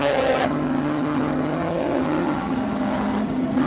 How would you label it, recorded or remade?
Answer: remade